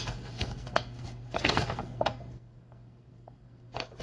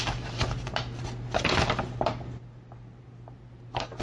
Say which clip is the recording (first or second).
second